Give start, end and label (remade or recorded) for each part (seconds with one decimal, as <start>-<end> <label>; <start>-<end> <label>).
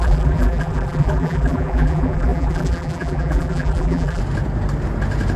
0.0-4.2 remade; 4.2-5.4 recorded